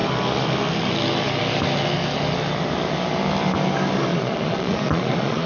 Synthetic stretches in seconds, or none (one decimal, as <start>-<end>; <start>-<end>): 4.1-5.5